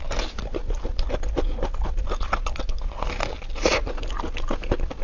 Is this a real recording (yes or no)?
yes